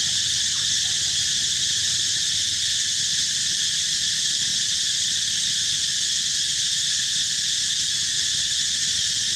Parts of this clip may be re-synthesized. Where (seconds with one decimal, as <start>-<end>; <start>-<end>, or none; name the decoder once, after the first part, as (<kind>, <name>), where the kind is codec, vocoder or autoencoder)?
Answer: none